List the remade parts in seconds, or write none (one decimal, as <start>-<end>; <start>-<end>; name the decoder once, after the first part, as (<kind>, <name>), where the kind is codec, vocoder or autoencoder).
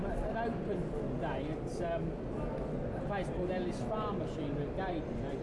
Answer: none